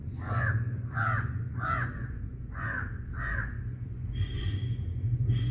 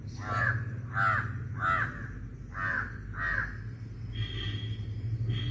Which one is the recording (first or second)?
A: second